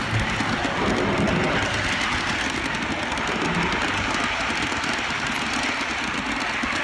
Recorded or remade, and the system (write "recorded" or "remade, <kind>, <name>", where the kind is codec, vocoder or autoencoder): recorded